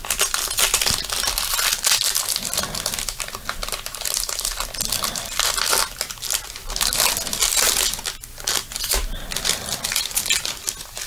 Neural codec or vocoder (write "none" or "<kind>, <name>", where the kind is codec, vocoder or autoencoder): none